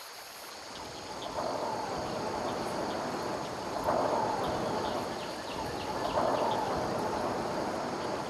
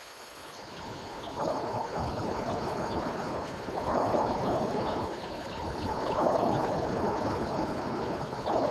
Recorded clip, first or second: first